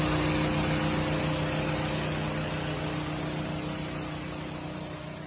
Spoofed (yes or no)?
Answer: no